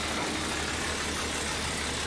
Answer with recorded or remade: recorded